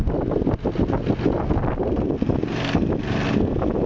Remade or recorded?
recorded